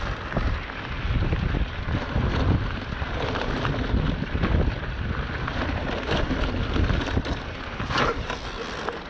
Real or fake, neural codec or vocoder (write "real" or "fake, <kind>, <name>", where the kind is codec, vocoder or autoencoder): real